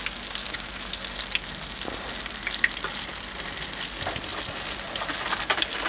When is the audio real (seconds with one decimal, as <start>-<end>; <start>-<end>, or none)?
0.0-0.4; 0.9-5.9